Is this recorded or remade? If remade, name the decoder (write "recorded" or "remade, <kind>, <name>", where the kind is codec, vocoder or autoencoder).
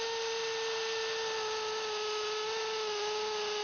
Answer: recorded